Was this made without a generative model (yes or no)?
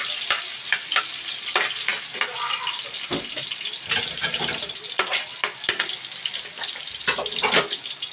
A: yes